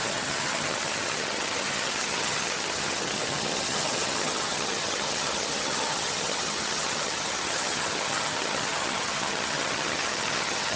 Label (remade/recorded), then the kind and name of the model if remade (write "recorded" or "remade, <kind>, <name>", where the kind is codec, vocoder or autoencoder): remade, vocoder, HiFi-GAN